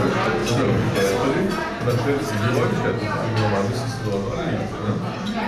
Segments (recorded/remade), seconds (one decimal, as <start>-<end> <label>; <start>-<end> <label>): 0.0-0.4 recorded; 0.4-2.0 remade; 2.0-4.8 recorded; 4.8-5.5 remade